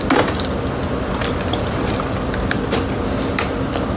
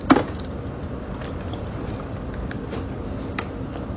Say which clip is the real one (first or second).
first